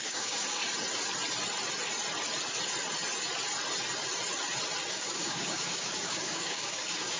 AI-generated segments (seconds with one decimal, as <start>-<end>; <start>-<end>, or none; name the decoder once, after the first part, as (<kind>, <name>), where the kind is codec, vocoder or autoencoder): 0.0-0.6 (codec, DAC); 4.9-7.2